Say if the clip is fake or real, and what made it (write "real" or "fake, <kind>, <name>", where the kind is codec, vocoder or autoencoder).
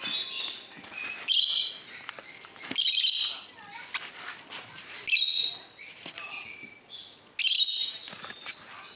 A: real